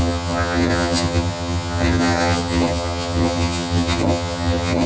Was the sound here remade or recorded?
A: remade